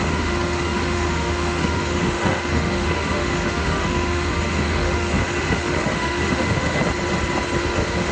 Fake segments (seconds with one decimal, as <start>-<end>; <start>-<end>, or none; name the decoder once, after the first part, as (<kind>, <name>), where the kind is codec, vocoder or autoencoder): 0.0-6.8 (autoencoder, DAC-VAE); 7.6-8.1

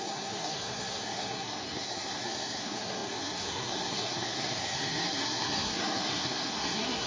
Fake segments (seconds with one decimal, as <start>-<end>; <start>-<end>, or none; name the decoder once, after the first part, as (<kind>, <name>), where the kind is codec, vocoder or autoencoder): 0.0-7.1 (codec, SNAC)

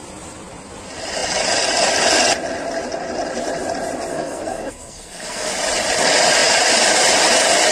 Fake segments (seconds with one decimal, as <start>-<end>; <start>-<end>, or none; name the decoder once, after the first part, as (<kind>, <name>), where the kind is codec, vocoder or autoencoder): 4.1-5.5 (codec, SNAC)

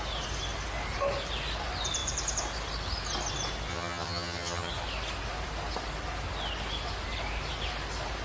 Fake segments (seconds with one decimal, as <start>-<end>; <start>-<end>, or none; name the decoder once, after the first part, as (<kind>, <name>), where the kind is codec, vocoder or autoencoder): 3.7-4.7 (vocoder, HiFi-GAN)

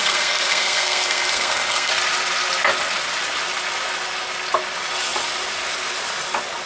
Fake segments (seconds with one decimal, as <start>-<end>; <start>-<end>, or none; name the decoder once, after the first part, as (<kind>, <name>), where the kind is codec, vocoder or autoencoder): 0.0-1.9 (codec, SNAC)

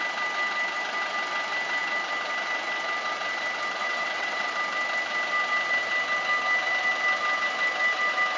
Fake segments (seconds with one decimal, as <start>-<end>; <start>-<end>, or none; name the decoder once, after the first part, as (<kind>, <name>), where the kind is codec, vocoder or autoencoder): 3.8-4.5 (vocoder, WaveNeXt)

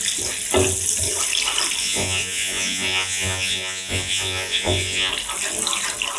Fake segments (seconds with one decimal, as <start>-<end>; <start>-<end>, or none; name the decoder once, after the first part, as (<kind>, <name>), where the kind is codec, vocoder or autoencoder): 1.8-5.1 (vocoder, Vocos)

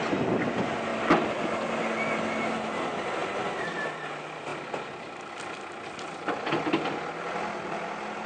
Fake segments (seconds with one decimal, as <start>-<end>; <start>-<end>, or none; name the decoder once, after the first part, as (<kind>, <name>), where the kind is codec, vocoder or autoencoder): none